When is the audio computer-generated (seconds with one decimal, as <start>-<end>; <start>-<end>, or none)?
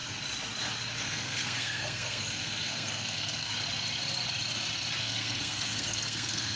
1.0-3.5; 5.0-6.6